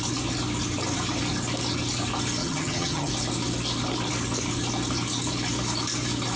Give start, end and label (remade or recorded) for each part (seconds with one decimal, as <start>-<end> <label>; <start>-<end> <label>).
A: 0.0-2.4 recorded; 2.4-3.1 remade; 3.1-6.4 recorded